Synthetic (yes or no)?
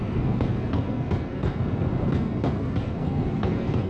yes